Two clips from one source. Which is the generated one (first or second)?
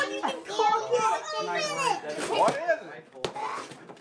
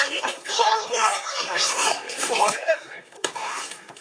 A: second